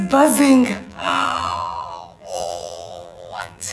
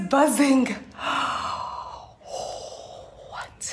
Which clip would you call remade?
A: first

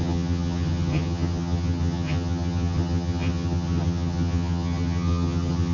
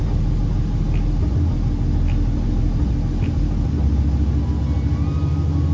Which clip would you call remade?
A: first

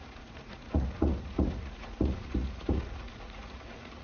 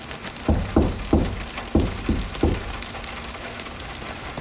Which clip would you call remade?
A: first